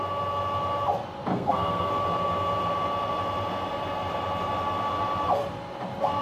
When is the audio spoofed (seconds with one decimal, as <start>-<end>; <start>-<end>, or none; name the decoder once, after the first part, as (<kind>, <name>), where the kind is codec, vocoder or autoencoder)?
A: 1.3-1.9 (codec, SNAC)